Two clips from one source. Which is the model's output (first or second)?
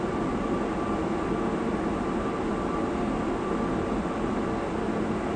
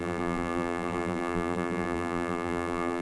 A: second